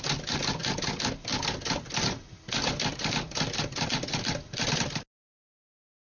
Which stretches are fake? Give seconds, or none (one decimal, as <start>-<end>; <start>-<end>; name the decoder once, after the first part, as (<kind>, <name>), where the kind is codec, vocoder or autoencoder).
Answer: none